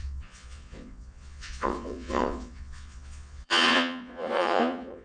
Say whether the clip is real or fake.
fake